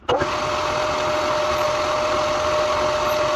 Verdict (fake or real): real